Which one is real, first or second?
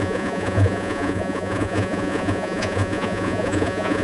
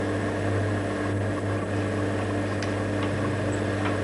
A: second